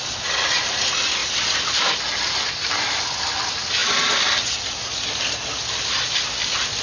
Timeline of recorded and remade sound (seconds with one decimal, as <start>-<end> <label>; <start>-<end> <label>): 0.0-1.2 recorded; 1.2-1.9 remade; 1.9-6.8 recorded